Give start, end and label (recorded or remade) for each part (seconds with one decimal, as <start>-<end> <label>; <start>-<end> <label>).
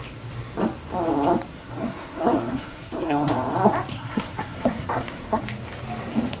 0.0-1.5 recorded; 1.5-3.3 remade; 3.3-3.9 recorded; 3.9-5.4 remade; 5.4-6.4 recorded